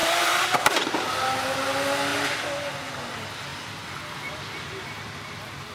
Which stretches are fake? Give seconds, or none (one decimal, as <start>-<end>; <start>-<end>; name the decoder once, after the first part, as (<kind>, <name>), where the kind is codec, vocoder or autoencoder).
0.0-1.1 (vocoder, BigVGAN v2)